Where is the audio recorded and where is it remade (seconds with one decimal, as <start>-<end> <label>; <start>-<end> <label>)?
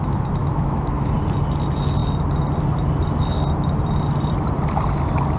0.0-0.4 recorded; 0.4-1.1 remade; 1.1-5.4 recorded